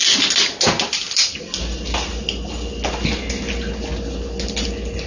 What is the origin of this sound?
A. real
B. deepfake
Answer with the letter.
A